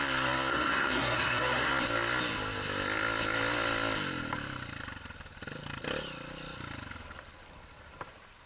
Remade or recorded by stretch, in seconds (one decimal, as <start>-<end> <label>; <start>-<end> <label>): 0.0-0.5 recorded; 0.5-1.7 remade; 1.7-8.5 recorded